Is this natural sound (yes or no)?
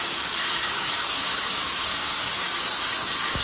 no